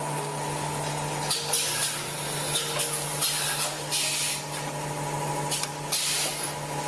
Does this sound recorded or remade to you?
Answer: recorded